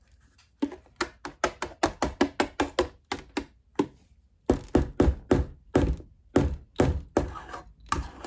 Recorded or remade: recorded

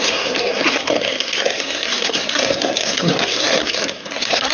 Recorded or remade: remade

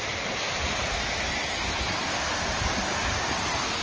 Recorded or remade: recorded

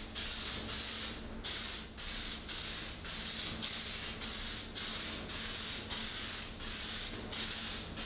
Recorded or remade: recorded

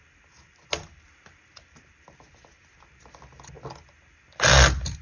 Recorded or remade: recorded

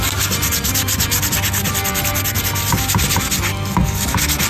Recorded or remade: recorded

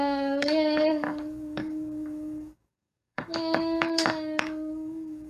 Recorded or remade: remade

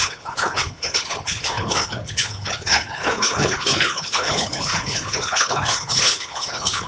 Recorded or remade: remade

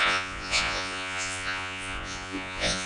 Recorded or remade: remade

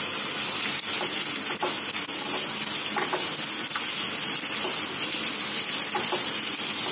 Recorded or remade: recorded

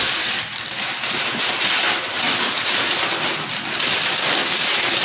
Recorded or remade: recorded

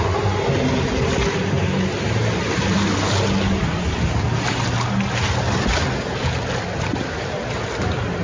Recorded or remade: recorded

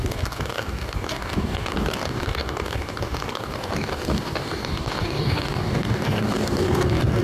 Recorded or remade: remade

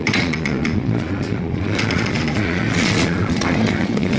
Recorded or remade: remade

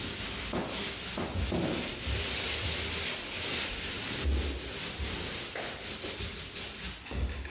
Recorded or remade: recorded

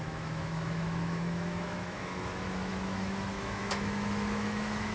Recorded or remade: remade